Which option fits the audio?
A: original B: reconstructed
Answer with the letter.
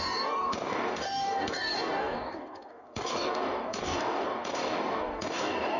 B